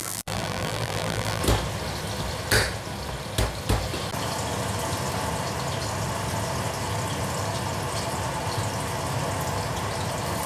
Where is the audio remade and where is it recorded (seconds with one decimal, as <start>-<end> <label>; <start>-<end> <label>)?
0.0-1.4 remade; 1.4-10.5 recorded